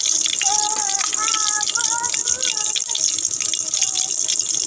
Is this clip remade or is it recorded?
recorded